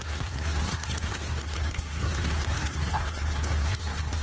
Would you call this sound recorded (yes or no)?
no